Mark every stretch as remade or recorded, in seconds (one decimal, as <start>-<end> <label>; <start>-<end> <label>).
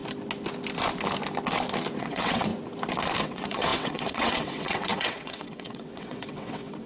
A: 0.0-2.0 recorded; 2.0-2.5 remade; 2.5-3.2 recorded; 3.2-6.9 remade